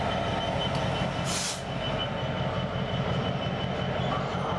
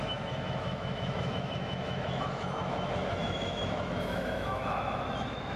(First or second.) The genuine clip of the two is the first